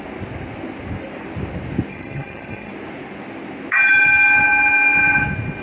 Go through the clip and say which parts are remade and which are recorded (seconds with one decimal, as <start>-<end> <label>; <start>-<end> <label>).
0.0-1.9 recorded; 1.9-2.7 remade; 2.7-5.6 recorded